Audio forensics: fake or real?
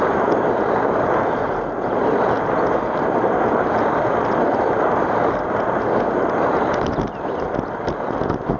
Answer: real